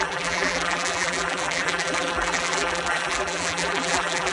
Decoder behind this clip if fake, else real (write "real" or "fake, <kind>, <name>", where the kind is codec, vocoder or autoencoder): fake, vocoder, BigVGAN v2